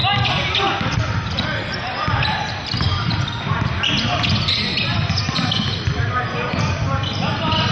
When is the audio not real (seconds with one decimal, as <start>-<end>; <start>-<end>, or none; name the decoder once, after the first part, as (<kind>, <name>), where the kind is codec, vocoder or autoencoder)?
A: none